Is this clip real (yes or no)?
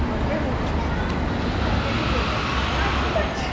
yes